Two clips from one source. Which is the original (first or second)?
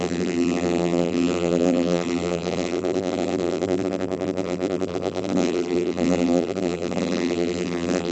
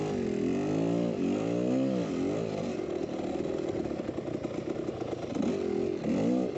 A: second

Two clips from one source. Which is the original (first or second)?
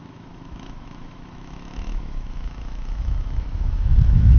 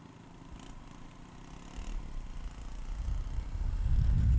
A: second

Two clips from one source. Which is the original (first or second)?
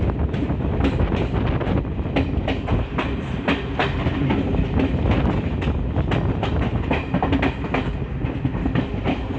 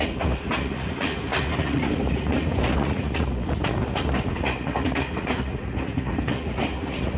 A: first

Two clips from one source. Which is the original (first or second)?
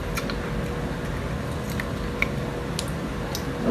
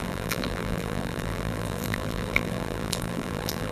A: first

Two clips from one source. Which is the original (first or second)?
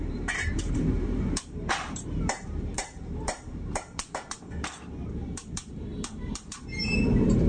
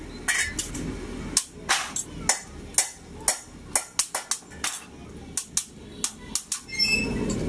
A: second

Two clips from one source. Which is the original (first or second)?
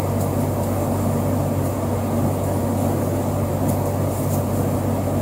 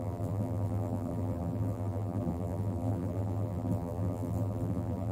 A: first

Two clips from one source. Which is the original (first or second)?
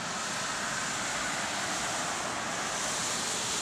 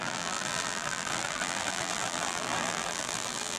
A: first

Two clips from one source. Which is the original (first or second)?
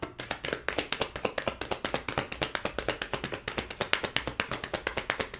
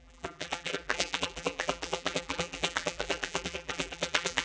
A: first